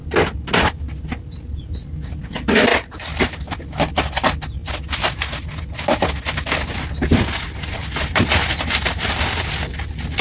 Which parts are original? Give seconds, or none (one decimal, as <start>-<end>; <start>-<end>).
0.0-10.2